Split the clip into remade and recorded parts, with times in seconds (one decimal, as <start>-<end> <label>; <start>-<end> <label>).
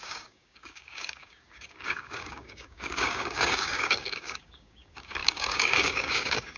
0.0-6.6 remade